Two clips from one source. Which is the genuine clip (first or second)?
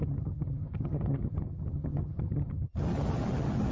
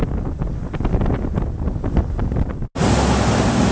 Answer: second